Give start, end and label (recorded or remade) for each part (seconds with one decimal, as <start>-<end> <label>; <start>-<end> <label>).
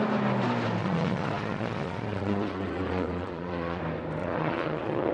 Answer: 0.0-0.8 recorded; 0.8-3.8 remade; 3.8-4.2 recorded; 4.2-5.1 remade